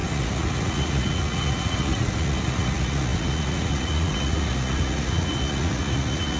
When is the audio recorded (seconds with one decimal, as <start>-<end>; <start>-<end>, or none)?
none